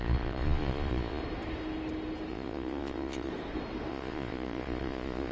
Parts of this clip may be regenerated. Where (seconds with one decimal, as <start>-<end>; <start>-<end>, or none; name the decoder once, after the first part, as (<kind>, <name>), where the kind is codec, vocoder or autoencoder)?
0.0-1.2 (vocoder, Vocos); 2.3-3.3; 3.9-5.3